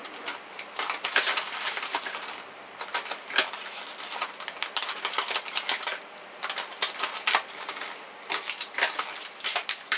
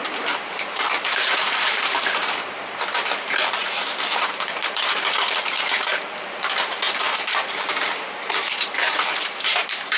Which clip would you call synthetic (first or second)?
second